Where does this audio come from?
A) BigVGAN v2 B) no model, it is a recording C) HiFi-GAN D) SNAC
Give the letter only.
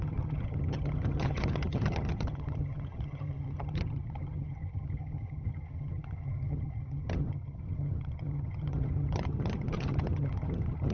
C